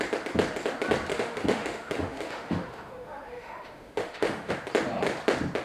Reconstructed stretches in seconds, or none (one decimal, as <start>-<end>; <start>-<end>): 1.1-4.5

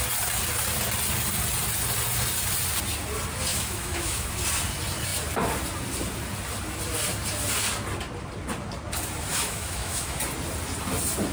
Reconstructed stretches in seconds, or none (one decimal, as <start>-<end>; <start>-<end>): 3.5-4.4; 9.3-10.2